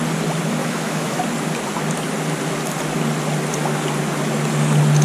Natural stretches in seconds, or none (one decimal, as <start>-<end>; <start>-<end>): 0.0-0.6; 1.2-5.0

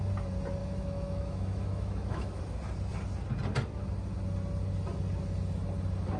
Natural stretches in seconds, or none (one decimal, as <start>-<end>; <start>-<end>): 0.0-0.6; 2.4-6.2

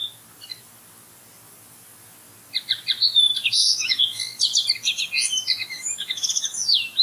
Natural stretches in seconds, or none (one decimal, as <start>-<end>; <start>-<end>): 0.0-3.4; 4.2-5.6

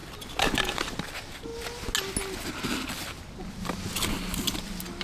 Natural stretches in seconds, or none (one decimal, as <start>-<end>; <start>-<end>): 0.0-5.0